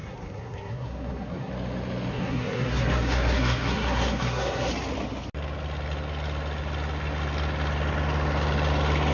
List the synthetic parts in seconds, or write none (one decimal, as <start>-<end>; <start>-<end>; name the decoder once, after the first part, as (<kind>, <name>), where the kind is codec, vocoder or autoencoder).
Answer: 0.0-1.5 (codec, SNAC); 2.1-4.7